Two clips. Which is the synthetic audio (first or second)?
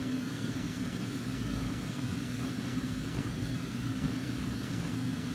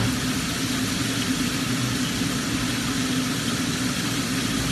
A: first